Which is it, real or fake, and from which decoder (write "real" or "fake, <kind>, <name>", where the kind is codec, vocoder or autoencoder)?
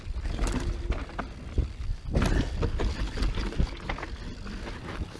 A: real